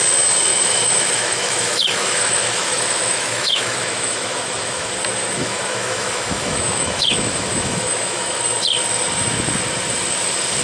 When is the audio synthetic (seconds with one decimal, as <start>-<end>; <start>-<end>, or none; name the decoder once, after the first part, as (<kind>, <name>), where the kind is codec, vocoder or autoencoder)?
0.5-4.9 (autoencoder, DAC-VAE); 5.4-8.4